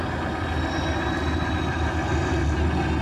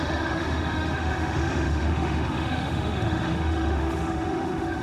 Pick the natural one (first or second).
first